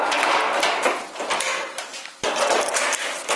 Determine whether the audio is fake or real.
real